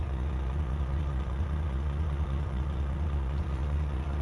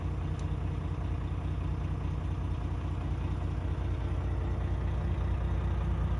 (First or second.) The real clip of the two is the second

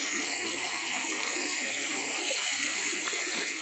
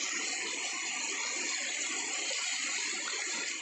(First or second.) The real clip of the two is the second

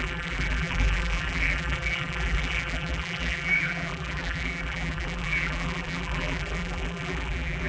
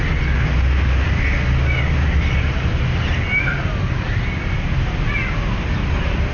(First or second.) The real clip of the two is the second